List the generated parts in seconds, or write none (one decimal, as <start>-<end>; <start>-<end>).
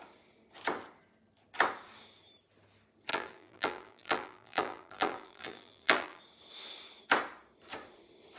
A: 3.1-6.2